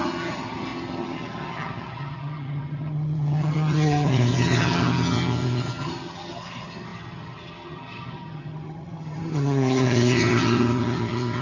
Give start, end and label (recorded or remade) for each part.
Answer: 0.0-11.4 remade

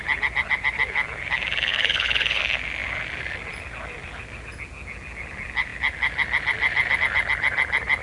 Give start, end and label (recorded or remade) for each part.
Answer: 0.0-1.7 recorded; 1.7-2.4 remade; 2.4-8.0 recorded